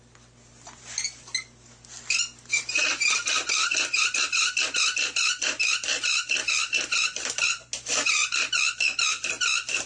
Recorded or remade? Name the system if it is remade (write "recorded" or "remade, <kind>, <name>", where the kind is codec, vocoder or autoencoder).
recorded